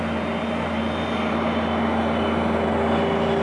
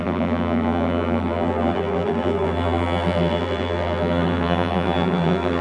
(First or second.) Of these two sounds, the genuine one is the first